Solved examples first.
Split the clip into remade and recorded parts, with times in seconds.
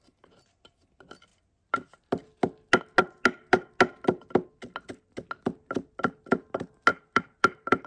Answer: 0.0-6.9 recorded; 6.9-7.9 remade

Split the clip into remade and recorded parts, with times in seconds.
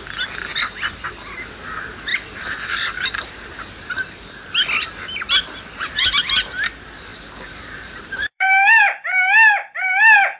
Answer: 0.0-2.1 recorded; 2.1-3.9 remade; 3.9-7.1 recorded; 7.1-8.8 remade; 8.8-10.4 recorded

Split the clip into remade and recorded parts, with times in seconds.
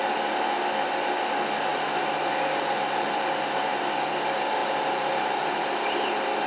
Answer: 0.0-1.7 recorded; 1.7-3.9 remade; 3.9-4.6 recorded; 4.6-5.6 remade; 5.6-6.5 recorded